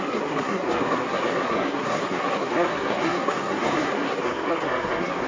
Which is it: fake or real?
fake